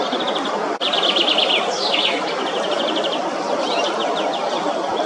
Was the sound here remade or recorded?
remade